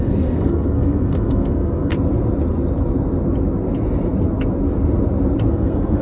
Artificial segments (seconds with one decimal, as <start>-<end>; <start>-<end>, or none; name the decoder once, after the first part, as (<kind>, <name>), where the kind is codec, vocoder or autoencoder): 0.0-1.9 (codec, SNAC); 5.5-6.0